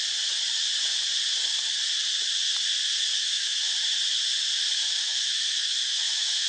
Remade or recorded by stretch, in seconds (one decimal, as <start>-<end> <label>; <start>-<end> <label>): 0.0-3.1 recorded; 3.1-3.7 remade; 3.7-4.8 recorded; 4.8-6.5 remade